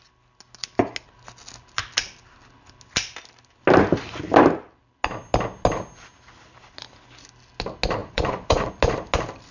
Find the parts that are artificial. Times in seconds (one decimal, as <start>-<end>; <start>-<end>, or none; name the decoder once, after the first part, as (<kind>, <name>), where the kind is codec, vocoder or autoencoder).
8.0-8.7 (vocoder, Vocos)